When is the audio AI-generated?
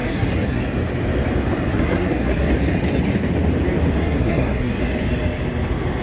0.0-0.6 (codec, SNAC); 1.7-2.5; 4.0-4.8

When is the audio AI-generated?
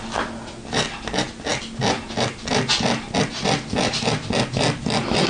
none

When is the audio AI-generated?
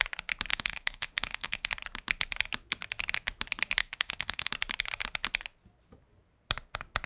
0.5-1.7 (autoencoder, DAC-VAE); 3.8-4.5